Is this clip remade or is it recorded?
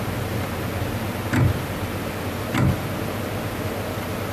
recorded